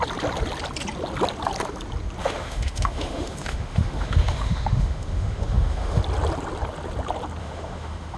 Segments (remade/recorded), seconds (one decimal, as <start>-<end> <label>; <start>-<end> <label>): 0.0-2.2 recorded; 2.2-6.0 remade; 6.0-7.4 recorded; 7.4-8.2 remade